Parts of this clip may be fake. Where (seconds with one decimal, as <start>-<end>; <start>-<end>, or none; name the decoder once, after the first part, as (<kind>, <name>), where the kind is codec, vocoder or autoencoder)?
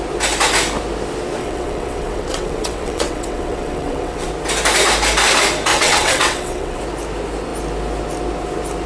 1.4-4.3 (vocoder, WaveNeXt); 5.7-6.8